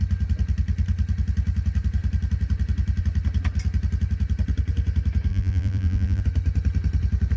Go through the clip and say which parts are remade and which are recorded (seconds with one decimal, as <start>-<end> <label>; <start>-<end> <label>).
0.0-5.3 recorded; 5.3-6.2 remade; 6.2-7.4 recorded